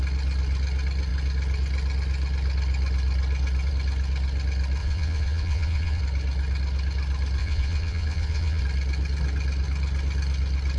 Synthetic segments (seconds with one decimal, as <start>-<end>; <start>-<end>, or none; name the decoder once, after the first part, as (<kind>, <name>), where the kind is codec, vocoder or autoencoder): 4.8-6.0 (vocoder, Vocos); 7.4-8.6